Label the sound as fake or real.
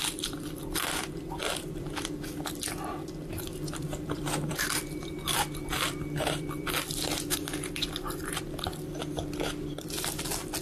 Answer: fake